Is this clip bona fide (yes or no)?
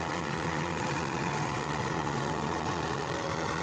no